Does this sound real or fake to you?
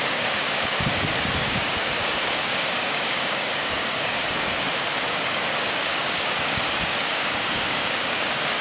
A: fake